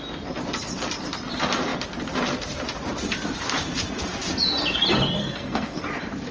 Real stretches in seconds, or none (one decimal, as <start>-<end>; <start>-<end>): 0.0-5.2; 5.8-6.3